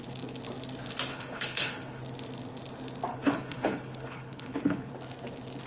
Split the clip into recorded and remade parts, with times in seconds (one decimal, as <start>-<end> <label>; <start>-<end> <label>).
0.0-1.1 recorded; 1.1-2.0 remade; 2.0-3.1 recorded; 3.1-4.9 remade; 4.9-5.7 recorded